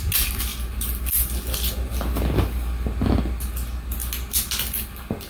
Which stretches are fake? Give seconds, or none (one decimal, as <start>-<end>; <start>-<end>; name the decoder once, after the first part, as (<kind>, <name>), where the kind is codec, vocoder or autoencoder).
none